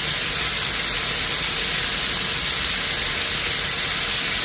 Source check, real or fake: real